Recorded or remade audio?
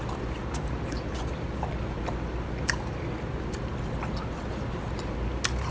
recorded